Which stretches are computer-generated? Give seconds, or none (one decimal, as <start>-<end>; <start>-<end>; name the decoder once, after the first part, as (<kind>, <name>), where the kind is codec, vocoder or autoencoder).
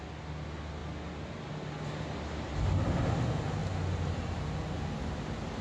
none